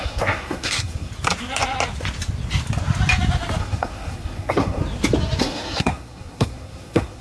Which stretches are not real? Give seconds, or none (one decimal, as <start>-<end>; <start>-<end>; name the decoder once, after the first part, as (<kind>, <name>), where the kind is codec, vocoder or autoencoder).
0.0-1.1 (codec, SNAC); 3.6-4.8; 5.4-7.2